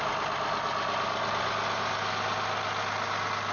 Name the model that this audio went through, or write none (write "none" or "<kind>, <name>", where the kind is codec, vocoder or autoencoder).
none